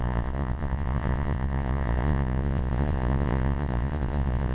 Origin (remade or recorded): remade